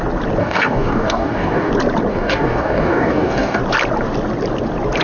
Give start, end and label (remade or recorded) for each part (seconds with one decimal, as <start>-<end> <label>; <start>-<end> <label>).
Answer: 0.0-0.4 recorded; 0.4-1.7 remade; 1.7-2.1 recorded; 2.1-3.6 remade; 3.6-5.0 recorded